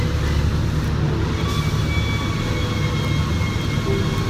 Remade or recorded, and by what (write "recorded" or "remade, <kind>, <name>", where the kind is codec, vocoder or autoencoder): recorded